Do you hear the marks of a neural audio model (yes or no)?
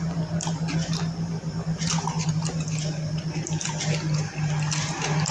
yes